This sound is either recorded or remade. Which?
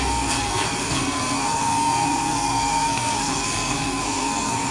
remade